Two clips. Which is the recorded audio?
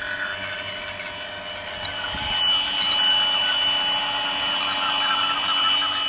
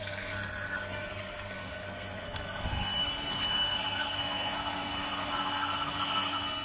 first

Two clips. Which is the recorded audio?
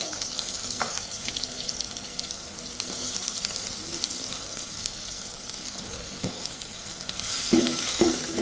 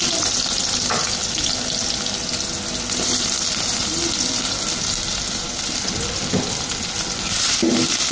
second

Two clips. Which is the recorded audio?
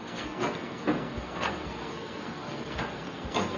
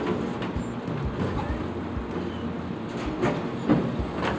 second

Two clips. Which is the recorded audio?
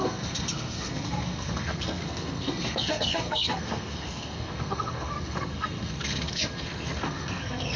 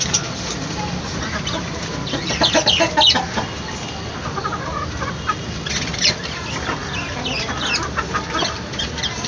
second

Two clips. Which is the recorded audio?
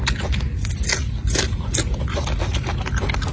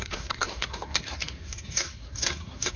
first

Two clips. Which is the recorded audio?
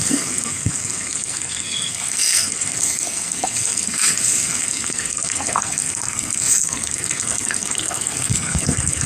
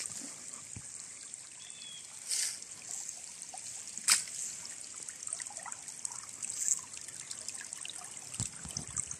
second